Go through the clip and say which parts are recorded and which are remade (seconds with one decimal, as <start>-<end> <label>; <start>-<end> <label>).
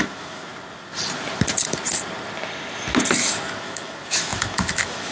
0.0-0.5 remade; 0.5-3.6 recorded; 3.6-5.1 remade